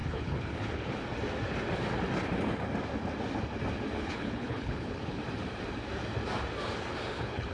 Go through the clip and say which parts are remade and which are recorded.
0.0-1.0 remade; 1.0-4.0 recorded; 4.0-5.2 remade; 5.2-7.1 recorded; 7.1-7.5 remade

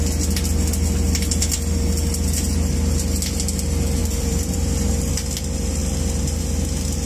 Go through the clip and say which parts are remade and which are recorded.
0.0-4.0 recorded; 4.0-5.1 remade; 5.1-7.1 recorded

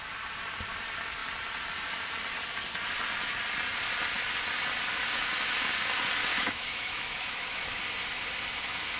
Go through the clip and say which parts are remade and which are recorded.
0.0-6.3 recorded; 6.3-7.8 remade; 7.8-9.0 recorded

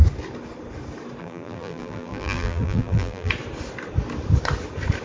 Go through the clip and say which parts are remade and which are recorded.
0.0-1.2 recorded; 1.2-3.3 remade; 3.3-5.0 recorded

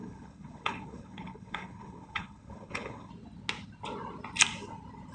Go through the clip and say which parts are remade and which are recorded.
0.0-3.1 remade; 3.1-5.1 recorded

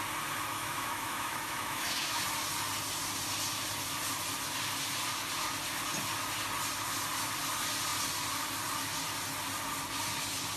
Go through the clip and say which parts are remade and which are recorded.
0.0-0.5 recorded; 0.5-2.2 remade; 2.2-10.6 recorded